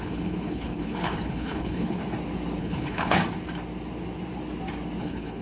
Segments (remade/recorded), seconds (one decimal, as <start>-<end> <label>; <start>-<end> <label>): 0.0-2.0 remade; 2.0-2.6 recorded; 2.6-3.2 remade; 3.2-5.0 recorded; 5.0-5.4 remade